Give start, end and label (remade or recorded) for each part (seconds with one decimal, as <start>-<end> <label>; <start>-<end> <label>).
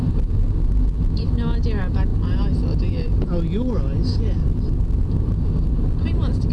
0.0-6.5 recorded